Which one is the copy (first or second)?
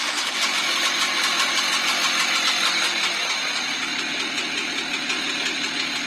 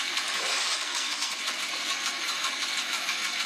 second